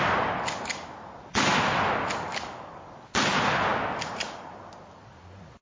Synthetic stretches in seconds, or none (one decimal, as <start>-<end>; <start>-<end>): 2.3-2.9